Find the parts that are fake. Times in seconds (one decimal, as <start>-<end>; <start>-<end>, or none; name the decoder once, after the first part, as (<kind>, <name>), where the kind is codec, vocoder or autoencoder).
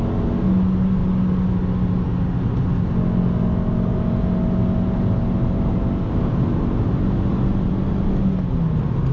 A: 7.3-8.2 (vocoder, BigVGAN v2)